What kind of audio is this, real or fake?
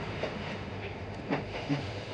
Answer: fake